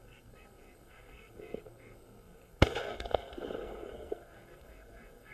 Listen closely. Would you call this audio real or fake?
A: fake